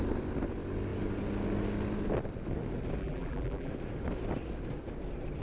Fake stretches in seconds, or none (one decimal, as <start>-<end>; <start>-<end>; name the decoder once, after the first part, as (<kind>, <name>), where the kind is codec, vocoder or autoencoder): 3.0-3.7 (vocoder, BigVGAN v2)